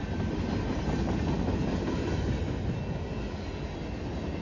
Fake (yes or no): no